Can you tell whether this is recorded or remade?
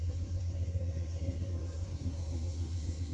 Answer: remade